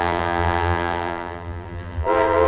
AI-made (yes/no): yes